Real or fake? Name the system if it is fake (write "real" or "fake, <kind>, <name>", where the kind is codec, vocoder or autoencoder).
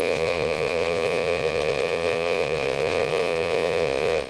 fake, vocoder, Vocos